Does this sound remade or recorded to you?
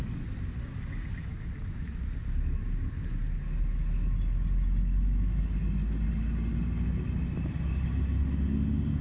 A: recorded